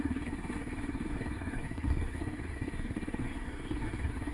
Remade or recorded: remade